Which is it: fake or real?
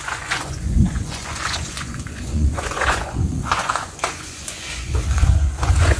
fake